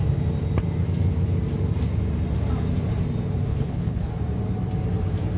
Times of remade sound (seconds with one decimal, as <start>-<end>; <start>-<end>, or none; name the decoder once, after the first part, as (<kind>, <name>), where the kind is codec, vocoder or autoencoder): 3.5-4.1 (codec, HILCodec)

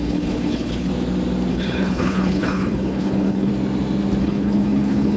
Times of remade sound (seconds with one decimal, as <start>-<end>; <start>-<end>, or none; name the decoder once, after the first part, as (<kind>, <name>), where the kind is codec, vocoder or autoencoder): 0.0-0.9 (codec, HILCodec); 1.5-3.5; 4.2-5.2

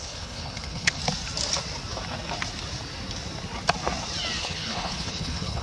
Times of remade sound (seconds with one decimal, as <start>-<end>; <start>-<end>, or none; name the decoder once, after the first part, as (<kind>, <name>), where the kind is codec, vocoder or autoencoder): 0.0-1.0 (codec, HILCodec); 4.4-5.6

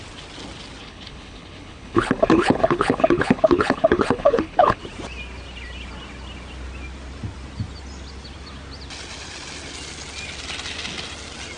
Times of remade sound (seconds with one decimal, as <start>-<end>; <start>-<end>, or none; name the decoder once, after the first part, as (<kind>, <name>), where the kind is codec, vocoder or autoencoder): 0.8-4.8 (codec, HILCodec)

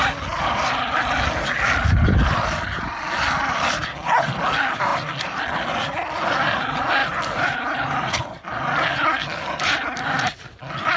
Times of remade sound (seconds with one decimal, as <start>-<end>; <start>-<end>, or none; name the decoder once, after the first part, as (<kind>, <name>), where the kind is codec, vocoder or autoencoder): none